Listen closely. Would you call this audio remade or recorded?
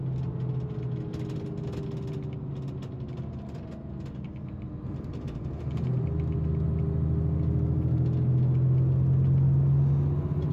recorded